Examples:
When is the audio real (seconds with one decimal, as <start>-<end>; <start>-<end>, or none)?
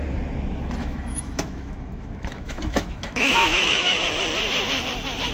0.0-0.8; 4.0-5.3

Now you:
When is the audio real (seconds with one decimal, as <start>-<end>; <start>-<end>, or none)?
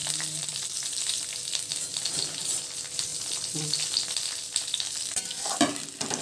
0.0-6.2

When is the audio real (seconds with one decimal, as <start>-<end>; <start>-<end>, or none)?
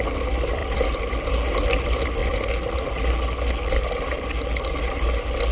0.0-5.5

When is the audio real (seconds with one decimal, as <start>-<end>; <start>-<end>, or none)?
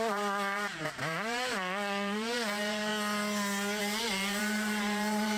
2.9-3.8